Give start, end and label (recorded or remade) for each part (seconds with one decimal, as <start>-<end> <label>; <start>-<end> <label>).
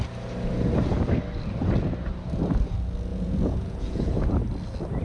0.0-3.1 recorded; 3.1-4.2 remade; 4.2-5.0 recorded